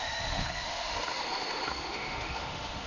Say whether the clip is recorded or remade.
remade